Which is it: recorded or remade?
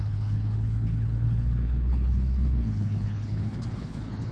remade